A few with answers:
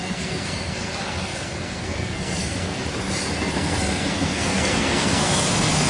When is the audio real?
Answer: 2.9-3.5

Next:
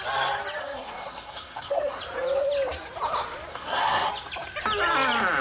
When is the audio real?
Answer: 0.0-0.6; 2.0-3.5; 4.1-5.4

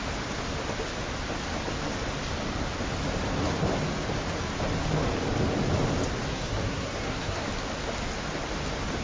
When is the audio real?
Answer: 0.0-6.3; 7.4-9.0

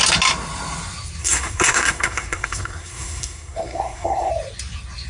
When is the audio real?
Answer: 0.0-1.2; 4.3-5.1

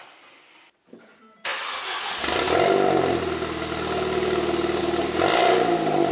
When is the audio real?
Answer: 0.0-6.1

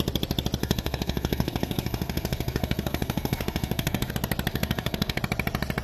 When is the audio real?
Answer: 0.0-0.6; 4.1-4.5; 5.2-5.8